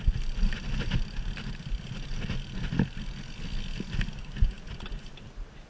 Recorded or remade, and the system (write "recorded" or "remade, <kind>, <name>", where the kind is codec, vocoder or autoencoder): recorded